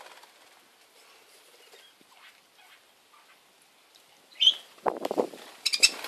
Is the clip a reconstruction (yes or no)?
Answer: no